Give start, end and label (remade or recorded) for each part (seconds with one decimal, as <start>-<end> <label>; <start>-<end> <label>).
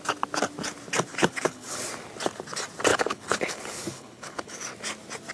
0.0-1.1 recorded; 1.1-1.9 remade; 1.9-2.9 recorded; 2.9-4.6 remade; 4.6-5.3 recorded